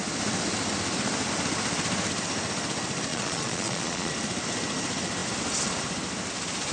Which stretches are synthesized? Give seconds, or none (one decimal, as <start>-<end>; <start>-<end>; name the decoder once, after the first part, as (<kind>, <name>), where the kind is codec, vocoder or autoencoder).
3.1-4.1 (vocoder, Vocos)